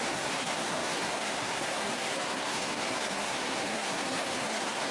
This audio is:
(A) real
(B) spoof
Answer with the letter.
B